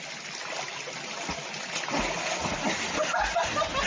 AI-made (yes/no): no